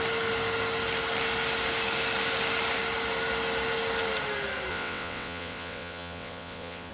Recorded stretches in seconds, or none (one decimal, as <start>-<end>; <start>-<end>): 0.0-4.7